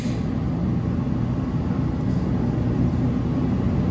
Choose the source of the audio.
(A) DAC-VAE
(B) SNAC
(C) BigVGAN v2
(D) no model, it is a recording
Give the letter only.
D